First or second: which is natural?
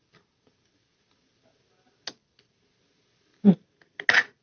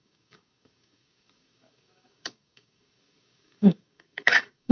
first